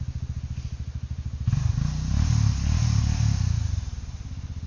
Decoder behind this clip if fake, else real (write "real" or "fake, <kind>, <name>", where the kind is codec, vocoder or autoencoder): real